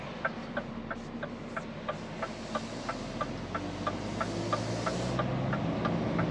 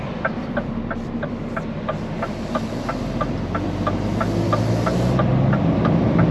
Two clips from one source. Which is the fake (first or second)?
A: second